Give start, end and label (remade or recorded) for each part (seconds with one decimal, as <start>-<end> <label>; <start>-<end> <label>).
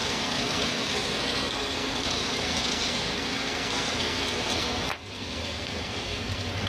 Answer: 0.0-6.7 remade